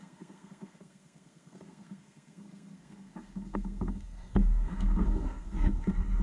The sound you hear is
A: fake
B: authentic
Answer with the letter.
A